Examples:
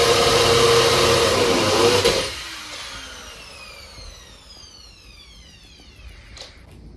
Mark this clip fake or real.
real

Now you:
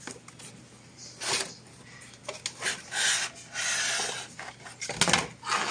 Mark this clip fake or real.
real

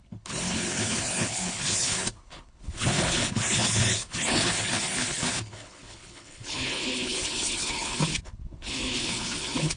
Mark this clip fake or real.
fake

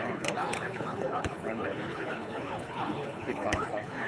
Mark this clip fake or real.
fake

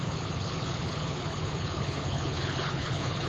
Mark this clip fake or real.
fake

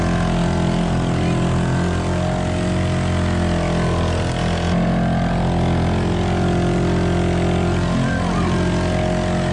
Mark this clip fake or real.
real